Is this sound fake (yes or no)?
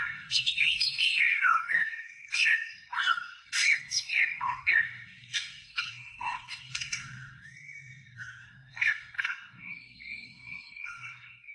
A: yes